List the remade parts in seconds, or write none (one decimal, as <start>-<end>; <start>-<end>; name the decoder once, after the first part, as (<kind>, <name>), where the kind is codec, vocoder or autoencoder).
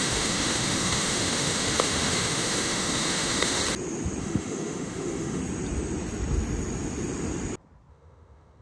0.0-3.6 (autoencoder, DAC-VAE); 4.2-5.4; 7.9-8.6